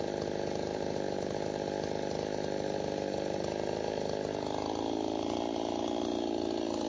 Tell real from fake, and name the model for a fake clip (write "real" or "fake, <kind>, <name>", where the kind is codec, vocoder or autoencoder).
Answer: real